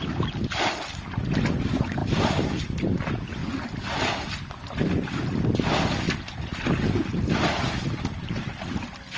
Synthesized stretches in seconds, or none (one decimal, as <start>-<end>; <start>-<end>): none